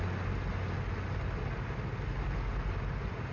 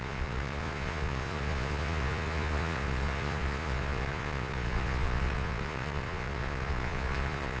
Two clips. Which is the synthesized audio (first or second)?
second